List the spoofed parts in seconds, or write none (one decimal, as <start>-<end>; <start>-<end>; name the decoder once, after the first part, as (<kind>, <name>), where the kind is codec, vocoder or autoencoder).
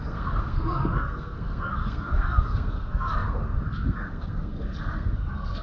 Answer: 0.0-5.6 (codec, SNAC)